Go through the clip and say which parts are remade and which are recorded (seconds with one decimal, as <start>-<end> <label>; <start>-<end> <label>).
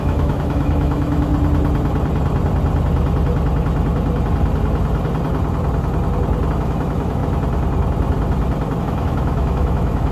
0.0-1.3 remade; 1.3-6.5 recorded; 6.5-7.2 remade; 7.2-8.8 recorded; 8.8-10.1 remade